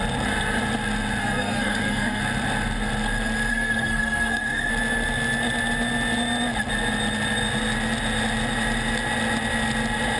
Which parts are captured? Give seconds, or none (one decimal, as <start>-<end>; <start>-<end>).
0.0-1.2; 2.2-3.5; 4.7-10.2